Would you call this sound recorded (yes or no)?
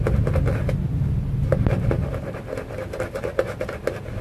yes